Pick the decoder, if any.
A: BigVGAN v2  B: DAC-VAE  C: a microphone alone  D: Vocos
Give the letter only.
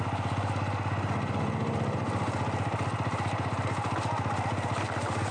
C